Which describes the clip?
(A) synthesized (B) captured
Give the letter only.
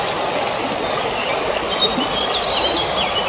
B